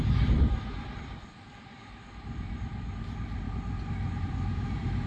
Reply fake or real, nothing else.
fake